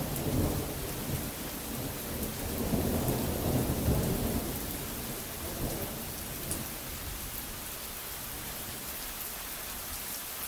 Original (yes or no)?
yes